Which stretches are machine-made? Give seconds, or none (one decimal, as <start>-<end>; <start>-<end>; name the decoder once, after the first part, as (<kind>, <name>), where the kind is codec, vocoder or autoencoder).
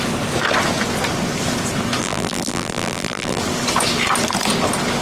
2.0-3.4 (vocoder, BigVGAN v2)